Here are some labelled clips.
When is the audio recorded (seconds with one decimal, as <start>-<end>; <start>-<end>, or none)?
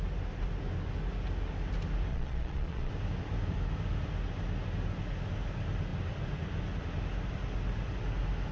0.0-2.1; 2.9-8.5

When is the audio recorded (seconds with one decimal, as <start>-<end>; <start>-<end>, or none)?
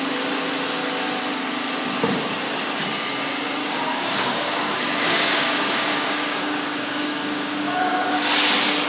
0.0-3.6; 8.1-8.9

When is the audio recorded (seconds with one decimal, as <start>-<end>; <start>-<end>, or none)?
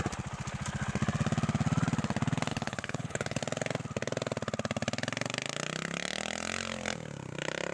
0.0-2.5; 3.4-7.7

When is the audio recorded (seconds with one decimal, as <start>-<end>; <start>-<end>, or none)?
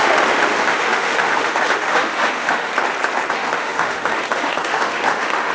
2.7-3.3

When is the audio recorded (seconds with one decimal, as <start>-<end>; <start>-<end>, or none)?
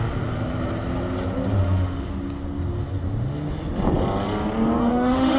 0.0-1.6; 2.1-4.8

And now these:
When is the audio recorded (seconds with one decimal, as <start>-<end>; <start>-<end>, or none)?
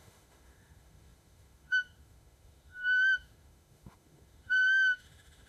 none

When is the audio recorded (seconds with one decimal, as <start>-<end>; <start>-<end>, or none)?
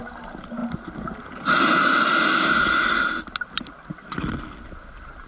0.0-5.3